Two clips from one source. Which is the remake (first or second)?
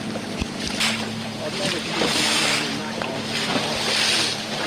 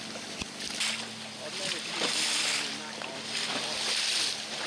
first